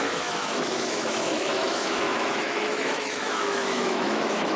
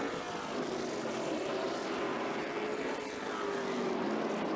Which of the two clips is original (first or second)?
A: second